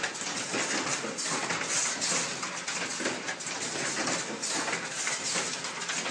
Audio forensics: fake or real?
real